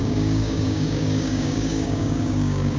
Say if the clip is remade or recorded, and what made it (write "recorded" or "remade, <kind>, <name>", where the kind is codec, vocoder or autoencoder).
remade, codec, DAC